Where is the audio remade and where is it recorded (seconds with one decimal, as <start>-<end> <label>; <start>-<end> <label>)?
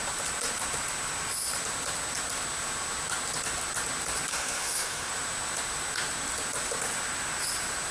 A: 0.0-4.3 recorded; 4.3-5.1 remade; 5.1-7.9 recorded